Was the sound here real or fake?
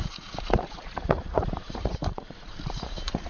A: fake